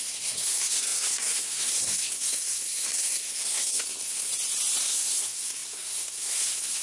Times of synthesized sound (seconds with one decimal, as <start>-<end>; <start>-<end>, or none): 0.0-4.3; 4.8-6.8